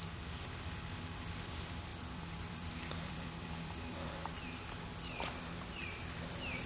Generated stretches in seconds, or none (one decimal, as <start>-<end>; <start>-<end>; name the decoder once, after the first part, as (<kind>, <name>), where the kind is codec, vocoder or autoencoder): 1.9-4.1 (vocoder, BigVGAN v2)